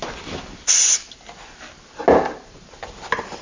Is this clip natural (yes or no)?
yes